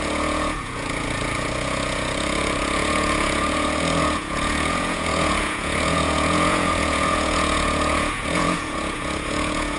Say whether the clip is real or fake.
fake